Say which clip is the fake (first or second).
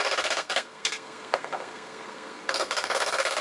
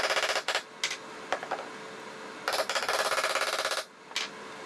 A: first